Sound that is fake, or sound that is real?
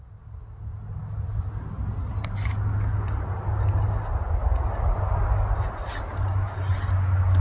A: real